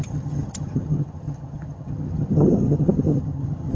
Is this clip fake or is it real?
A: fake